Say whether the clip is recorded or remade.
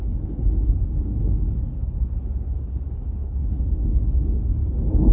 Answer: remade